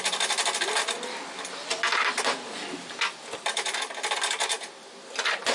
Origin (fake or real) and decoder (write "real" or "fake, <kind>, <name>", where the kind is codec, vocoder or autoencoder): real